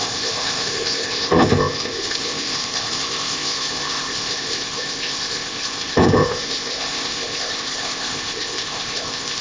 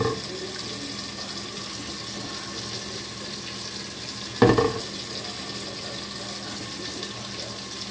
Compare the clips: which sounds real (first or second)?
second